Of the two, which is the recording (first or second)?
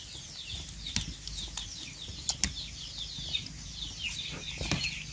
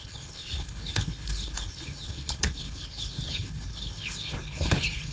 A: first